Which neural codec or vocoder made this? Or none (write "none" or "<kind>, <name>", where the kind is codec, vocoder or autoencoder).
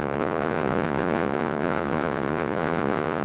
vocoder, Vocos